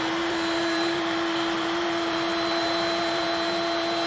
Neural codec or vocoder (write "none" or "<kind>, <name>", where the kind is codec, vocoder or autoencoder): vocoder, BigVGAN v2